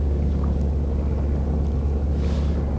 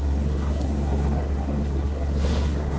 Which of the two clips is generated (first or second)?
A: second